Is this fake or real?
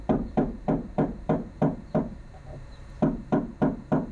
fake